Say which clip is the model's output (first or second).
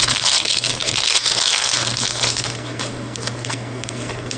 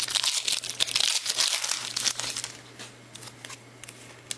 first